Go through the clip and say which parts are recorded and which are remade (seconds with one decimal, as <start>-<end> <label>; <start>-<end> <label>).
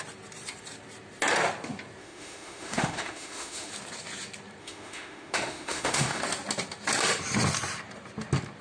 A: 0.0-2.0 recorded; 2.0-3.7 remade; 3.7-4.6 recorded; 4.6-6.2 remade; 6.2-8.6 recorded